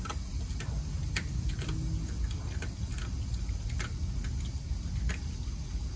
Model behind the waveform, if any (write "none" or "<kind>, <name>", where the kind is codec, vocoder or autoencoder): none